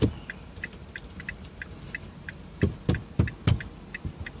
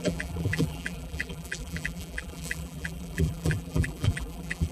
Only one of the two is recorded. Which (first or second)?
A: first